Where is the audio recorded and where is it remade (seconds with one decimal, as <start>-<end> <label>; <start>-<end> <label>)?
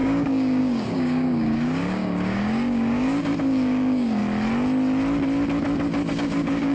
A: 0.0-4.2 remade; 4.2-6.1 recorded; 6.1-6.7 remade